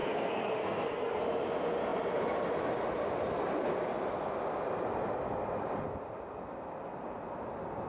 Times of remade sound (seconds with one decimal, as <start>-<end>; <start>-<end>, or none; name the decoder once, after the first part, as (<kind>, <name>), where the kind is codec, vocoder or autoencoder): 0.0-1.2 (codec, SNAC)